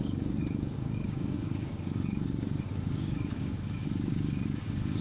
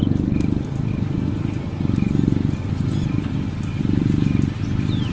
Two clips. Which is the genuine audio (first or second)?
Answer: second